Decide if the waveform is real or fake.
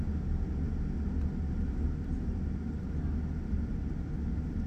real